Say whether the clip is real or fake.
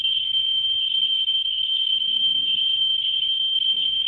fake